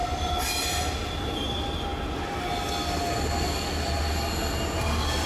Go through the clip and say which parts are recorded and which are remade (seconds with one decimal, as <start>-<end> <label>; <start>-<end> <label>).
0.0-5.3 recorded

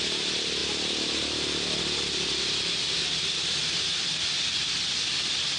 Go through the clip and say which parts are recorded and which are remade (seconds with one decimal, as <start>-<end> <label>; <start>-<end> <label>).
0.0-0.6 recorded; 0.6-1.8 remade; 1.8-5.6 recorded

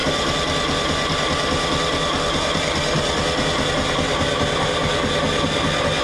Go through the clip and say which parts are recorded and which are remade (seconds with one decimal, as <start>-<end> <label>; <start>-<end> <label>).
0.0-3.6 recorded; 3.6-4.8 remade; 4.8-6.0 recorded

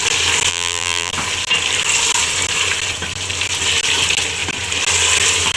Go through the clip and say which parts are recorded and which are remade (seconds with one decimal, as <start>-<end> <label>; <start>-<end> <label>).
0.0-0.5 recorded; 0.5-1.1 remade; 1.1-5.6 recorded

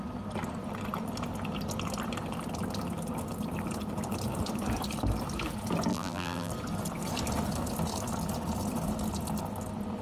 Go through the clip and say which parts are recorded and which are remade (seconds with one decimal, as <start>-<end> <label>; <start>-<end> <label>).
0.0-5.9 recorded; 5.9-6.5 remade; 6.5-10.0 recorded